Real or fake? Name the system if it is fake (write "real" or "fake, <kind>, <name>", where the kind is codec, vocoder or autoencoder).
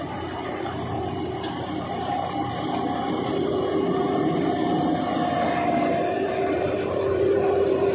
fake, vocoder, BigVGAN v2